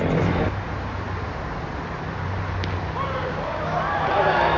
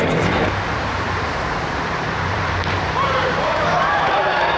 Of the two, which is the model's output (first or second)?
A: second